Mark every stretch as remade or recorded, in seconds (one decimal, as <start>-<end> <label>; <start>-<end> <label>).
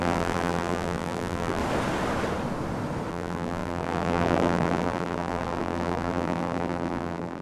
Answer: 0.0-1.6 remade; 1.6-3.1 recorded; 3.1-7.4 remade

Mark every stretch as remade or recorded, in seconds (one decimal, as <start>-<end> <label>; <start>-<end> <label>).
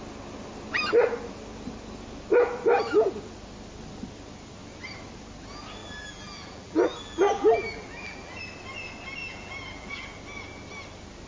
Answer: 0.0-5.8 recorded; 5.8-8.4 remade; 8.4-9.2 recorded; 9.2-9.9 remade; 9.9-11.3 recorded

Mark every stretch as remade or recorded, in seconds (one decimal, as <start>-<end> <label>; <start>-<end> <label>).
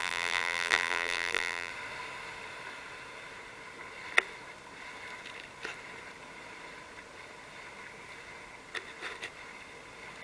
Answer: 0.0-1.7 remade; 1.7-10.2 recorded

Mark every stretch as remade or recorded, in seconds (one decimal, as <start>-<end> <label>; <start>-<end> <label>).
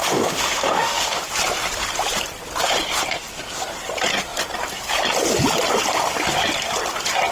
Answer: 0.0-1.2 remade; 1.2-7.3 recorded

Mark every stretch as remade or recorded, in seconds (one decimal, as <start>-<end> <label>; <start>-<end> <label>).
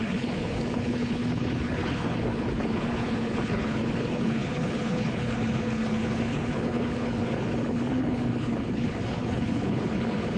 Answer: 0.0-10.4 remade